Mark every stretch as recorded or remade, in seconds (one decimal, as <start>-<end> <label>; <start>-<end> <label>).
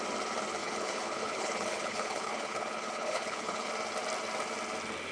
0.0-0.6 recorded; 0.6-3.7 remade; 3.7-5.1 recorded